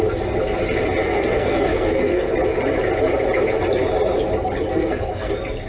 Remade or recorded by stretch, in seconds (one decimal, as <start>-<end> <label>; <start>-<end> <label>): 0.0-1.0 recorded; 1.0-2.3 remade; 2.3-4.7 recorded; 4.7-5.3 remade; 5.3-5.7 recorded

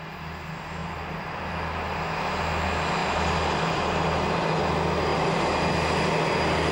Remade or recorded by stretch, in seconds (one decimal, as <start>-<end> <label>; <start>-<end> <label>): 0.0-0.8 recorded; 0.8-1.4 remade; 1.4-3.0 recorded; 3.0-4.6 remade; 4.6-5.1 recorded; 5.1-5.7 remade; 5.7-6.7 recorded

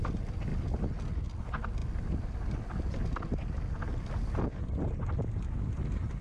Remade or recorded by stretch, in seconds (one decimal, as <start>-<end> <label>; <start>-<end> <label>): 0.0-6.2 recorded

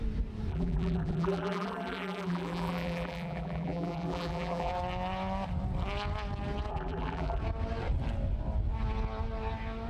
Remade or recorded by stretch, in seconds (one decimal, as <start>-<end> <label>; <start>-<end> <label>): 0.0-0.5 recorded; 0.5-4.7 remade; 4.7-6.7 recorded; 6.7-7.4 remade; 7.4-9.9 recorded

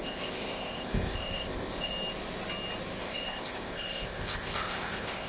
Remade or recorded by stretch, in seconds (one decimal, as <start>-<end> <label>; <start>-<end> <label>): 0.0-1.9 remade; 1.9-3.0 recorded; 3.0-5.3 remade

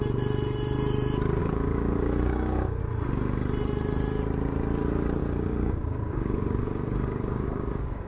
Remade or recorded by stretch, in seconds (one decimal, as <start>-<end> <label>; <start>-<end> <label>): 0.0-1.4 recorded; 1.4-2.8 remade; 2.8-5.2 recorded; 5.2-8.1 remade

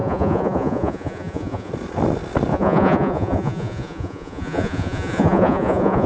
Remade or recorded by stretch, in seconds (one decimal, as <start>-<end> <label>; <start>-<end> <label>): 0.0-1.7 remade; 1.7-2.5 recorded; 2.5-6.1 remade

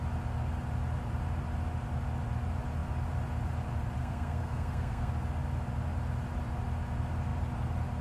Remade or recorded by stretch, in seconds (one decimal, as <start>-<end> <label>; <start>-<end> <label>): 0.0-4.0 recorded; 4.0-5.1 remade; 5.1-8.0 recorded